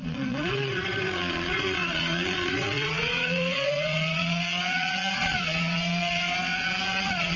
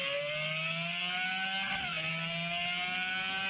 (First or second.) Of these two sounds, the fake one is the first